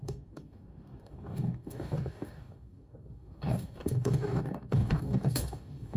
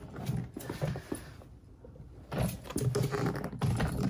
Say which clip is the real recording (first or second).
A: second